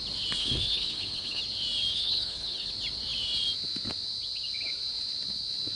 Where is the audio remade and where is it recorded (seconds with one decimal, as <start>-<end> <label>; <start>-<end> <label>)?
0.0-0.4 recorded; 0.4-1.4 remade; 1.4-1.9 recorded; 1.9-2.7 remade; 2.7-5.8 recorded